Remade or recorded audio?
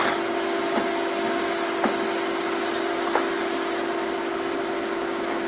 recorded